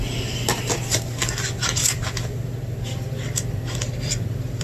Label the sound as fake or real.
real